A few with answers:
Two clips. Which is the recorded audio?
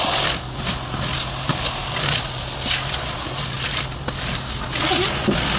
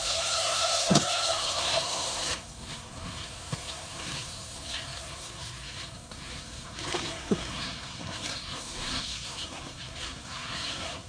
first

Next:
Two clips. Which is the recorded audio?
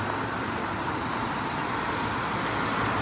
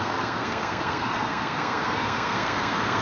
first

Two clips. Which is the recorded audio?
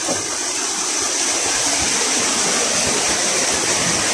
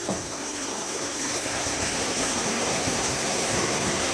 first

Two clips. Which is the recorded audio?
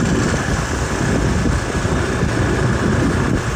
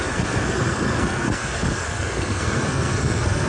first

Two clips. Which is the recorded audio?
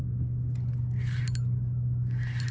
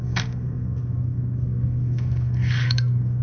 first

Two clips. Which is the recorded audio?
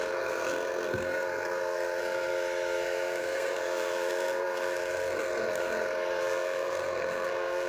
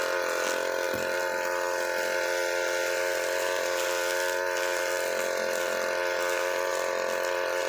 second